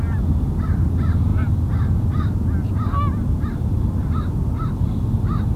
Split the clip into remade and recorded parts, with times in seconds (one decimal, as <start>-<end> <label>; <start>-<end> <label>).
0.0-5.6 recorded